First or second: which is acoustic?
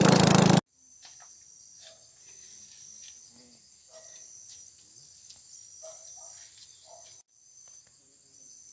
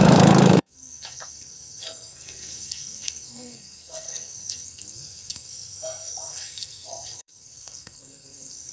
first